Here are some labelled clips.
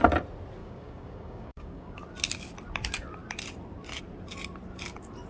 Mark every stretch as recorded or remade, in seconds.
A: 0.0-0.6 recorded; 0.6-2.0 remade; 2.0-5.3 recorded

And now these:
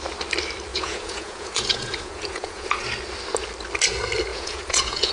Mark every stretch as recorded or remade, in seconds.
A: 0.0-0.7 recorded; 0.7-2.9 remade; 2.9-4.3 recorded; 4.3-5.1 remade

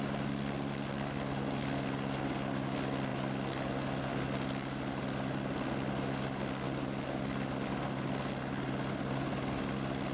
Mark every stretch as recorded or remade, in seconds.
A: 0.0-10.1 recorded

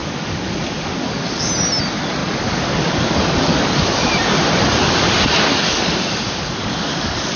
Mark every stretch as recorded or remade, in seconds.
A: 0.0-1.5 remade; 1.5-2.2 recorded; 2.2-4.0 remade; 4.0-5.5 recorded; 5.5-7.4 remade

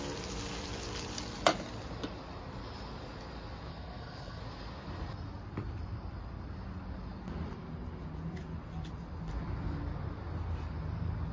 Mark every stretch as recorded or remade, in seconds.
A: 0.0-3.7 recorded; 3.7-4.4 remade; 4.4-11.3 recorded

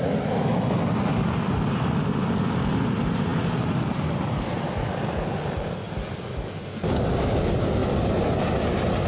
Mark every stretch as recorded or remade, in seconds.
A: 0.0-9.1 recorded